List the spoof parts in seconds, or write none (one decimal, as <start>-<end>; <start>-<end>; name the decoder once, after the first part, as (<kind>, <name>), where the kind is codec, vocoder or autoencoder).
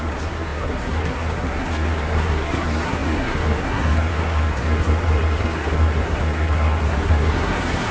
0.0-7.9 (codec, SNAC)